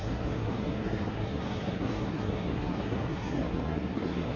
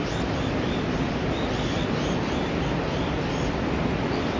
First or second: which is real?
second